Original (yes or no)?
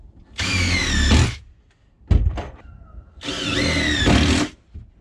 yes